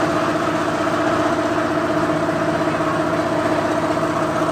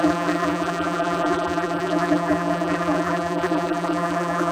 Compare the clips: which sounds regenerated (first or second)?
second